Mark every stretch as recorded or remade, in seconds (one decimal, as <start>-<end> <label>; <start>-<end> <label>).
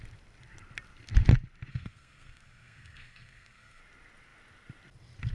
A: 0.0-1.7 recorded; 1.7-3.8 remade; 3.8-5.3 recorded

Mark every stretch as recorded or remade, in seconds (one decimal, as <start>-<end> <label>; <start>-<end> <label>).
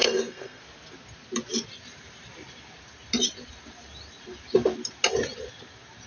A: 0.0-0.6 remade; 0.6-6.1 recorded